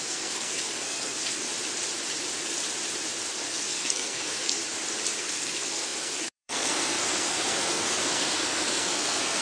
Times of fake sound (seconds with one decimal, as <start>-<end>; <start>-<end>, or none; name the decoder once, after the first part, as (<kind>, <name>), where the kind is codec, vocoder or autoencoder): 0.0-1.5 (codec, SNAC); 3.3-4.6; 5.2-9.4